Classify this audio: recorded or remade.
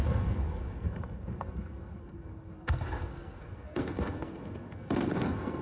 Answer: remade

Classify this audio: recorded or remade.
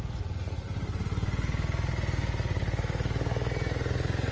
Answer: recorded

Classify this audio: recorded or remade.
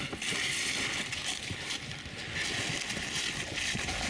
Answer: recorded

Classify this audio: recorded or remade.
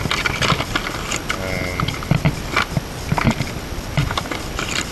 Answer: recorded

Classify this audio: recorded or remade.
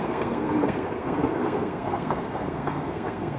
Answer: remade